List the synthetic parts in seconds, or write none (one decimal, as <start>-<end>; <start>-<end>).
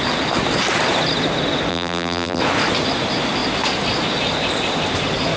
1.7-2.4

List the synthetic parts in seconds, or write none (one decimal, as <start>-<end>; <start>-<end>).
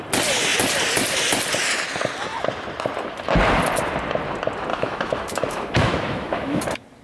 4.7-6.6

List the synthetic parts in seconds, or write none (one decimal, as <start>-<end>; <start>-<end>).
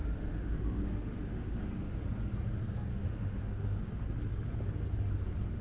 0.0-2.0; 2.9-3.8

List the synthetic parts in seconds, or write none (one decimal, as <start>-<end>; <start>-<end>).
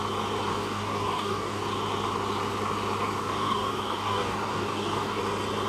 0.5-1.6; 3.2-5.2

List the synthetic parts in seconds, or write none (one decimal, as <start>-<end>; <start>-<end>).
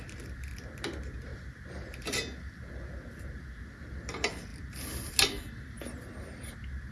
none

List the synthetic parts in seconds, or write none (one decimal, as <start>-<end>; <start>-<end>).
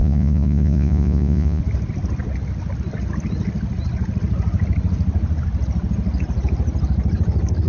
0.0-1.6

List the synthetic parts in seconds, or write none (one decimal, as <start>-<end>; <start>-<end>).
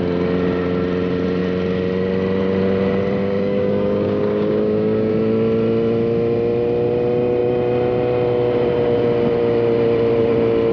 3.2-5.1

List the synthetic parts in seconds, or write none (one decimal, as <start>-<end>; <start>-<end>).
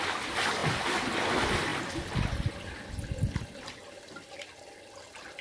none